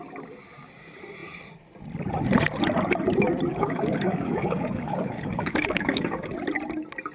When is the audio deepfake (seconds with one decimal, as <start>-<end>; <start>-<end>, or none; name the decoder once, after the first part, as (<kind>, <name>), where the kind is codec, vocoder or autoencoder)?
3.5-6.3 (codec, DAC)

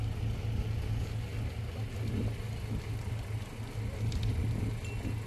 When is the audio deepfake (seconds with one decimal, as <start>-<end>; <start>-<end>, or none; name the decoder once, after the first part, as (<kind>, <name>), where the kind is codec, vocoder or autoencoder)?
none

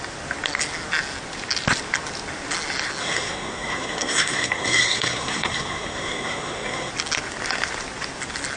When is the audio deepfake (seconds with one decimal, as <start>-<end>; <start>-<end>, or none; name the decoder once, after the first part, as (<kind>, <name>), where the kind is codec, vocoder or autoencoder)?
3.0-6.9 (codec, SNAC)